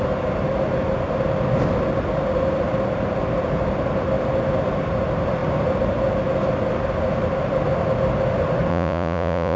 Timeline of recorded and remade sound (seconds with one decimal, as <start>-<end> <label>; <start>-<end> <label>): 0.0-8.7 recorded; 8.7-9.6 remade